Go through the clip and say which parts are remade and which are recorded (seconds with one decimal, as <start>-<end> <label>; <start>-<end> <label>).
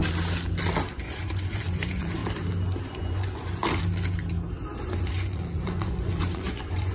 0.0-0.9 recorded; 0.9-2.2 remade; 2.2-2.9 recorded; 2.9-3.6 remade; 3.6-4.8 recorded; 4.8-6.9 remade